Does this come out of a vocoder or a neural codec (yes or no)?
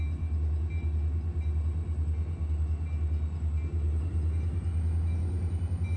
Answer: no